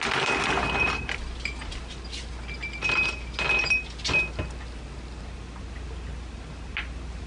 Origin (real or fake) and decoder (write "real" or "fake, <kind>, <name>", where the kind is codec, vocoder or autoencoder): real